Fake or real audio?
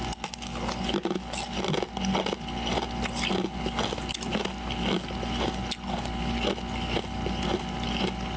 real